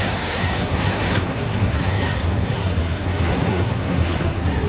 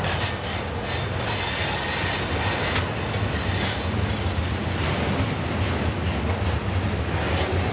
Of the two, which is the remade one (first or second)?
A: first